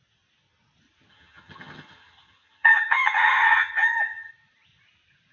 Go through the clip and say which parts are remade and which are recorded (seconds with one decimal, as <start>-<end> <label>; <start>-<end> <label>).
0.0-1.1 recorded; 1.1-4.3 remade; 4.3-5.3 recorded